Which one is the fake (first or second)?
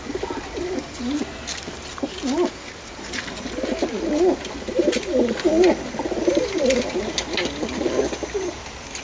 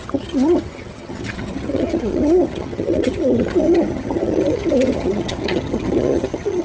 second